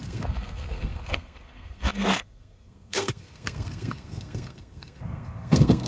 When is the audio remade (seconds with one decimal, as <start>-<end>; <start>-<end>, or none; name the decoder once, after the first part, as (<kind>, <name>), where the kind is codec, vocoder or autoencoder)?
0.0-5.9 (codec, SNAC)